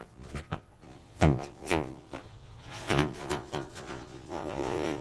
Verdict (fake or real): fake